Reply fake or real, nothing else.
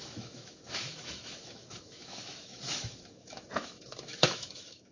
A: fake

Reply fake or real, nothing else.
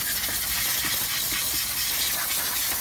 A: real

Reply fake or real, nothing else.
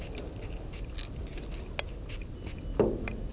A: real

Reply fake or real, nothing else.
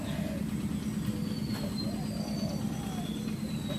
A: real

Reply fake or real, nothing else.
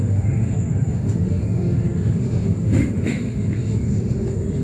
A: fake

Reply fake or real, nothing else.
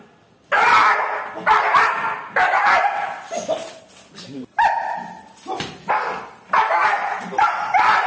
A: real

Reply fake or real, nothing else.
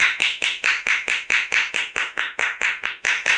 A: fake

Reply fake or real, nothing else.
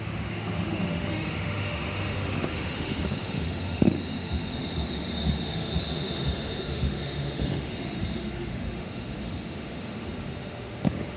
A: fake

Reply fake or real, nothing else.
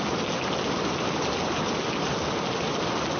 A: real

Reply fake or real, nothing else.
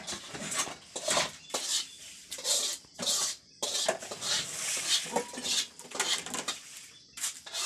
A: real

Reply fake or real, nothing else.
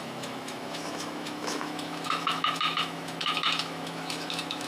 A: fake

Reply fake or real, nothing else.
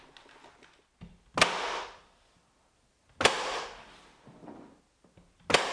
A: real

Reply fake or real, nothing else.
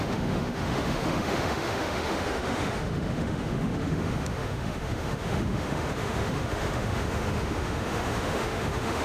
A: fake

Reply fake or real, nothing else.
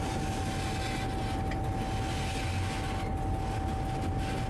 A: real